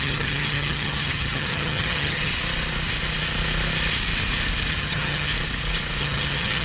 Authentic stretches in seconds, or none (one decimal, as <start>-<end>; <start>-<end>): 2.3-4.7; 5.3-6.0